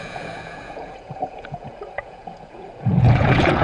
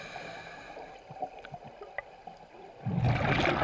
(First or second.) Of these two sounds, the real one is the second